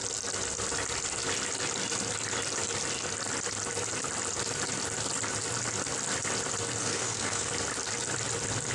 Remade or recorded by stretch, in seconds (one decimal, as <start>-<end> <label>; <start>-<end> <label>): 0.0-6.8 recorded; 6.8-7.5 remade; 7.5-8.7 recorded